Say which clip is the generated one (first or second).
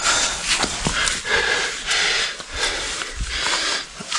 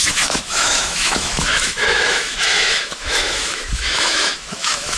second